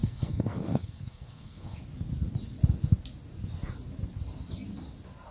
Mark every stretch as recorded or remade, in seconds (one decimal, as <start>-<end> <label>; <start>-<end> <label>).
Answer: 0.0-1.8 remade; 1.8-5.3 recorded